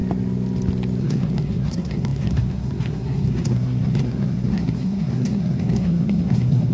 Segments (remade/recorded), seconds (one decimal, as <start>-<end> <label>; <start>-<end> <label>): 0.0-1.0 recorded; 1.0-6.7 remade

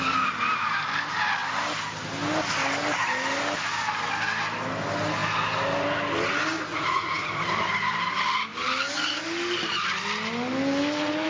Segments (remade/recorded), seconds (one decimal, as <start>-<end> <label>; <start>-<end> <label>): 0.0-6.7 recorded; 6.7-7.3 remade; 7.3-11.3 recorded

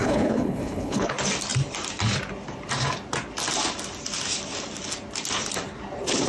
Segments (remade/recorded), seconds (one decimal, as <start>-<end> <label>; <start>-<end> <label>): 0.0-1.1 remade; 1.1-6.3 recorded

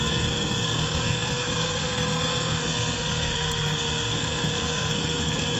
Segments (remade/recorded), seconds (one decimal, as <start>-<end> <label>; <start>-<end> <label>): 0.0-5.6 remade

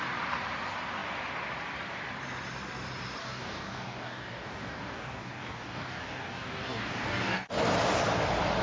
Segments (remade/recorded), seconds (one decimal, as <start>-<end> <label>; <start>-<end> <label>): 0.0-3.2 recorded; 3.2-7.5 remade; 7.5-8.6 recorded